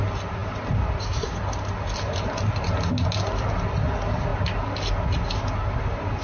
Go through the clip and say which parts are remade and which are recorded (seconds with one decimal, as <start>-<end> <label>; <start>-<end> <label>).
0.0-6.2 recorded